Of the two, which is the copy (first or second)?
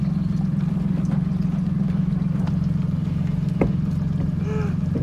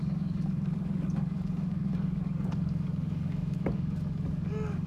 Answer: second